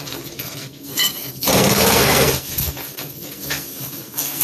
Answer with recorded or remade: remade